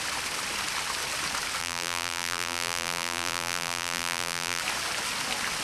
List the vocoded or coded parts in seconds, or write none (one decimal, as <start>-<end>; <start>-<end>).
1.6-4.6